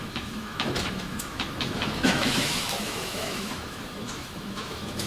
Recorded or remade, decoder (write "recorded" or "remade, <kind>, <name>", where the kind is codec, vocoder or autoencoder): remade, autoencoder, DAC-VAE